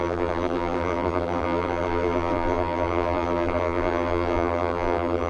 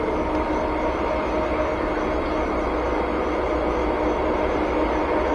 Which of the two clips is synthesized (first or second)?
first